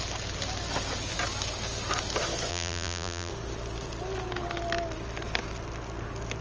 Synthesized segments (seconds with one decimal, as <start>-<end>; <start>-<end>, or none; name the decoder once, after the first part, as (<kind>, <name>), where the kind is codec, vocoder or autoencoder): 2.5-3.3 (vocoder, BigVGAN v2)